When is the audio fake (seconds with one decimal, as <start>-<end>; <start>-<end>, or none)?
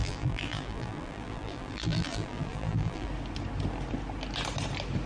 0.0-3.1